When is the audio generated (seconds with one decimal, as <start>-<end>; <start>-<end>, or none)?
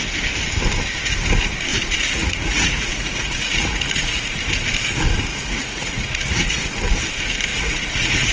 1.7-4.3; 5.3-6.8; 7.5-8.3